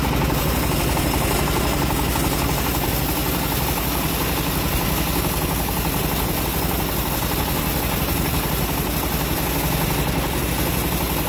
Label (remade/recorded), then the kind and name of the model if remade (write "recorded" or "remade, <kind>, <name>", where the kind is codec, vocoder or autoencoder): recorded